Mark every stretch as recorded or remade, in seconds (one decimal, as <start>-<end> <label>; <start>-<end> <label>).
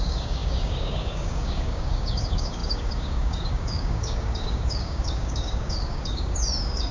0.0-6.9 remade